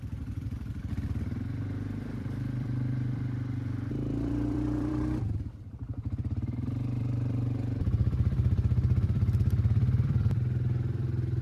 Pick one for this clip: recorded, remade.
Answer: remade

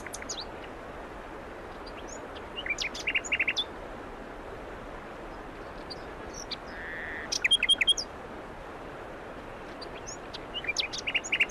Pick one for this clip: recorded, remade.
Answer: recorded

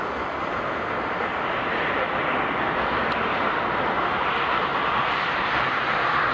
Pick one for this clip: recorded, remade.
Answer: recorded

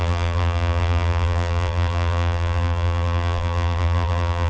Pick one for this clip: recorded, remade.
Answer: remade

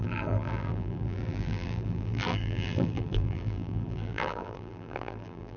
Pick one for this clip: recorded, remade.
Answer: remade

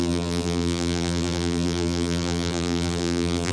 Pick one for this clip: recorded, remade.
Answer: remade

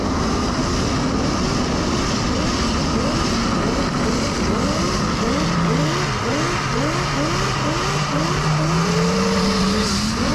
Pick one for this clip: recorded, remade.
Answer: recorded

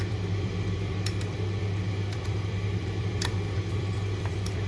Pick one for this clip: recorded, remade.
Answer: remade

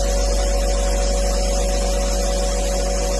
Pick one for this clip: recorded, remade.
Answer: recorded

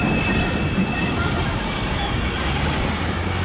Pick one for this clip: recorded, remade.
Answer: recorded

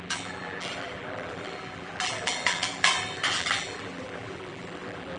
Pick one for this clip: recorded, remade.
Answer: remade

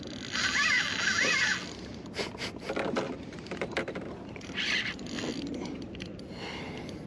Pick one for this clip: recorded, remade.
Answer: recorded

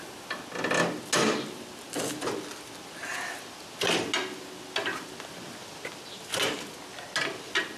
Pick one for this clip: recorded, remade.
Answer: recorded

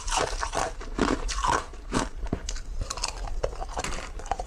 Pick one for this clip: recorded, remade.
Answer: remade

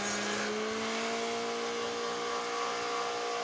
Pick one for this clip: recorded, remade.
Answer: recorded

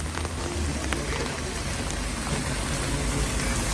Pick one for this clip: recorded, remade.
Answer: recorded